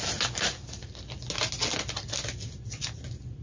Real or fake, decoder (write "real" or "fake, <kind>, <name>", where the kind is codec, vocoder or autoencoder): real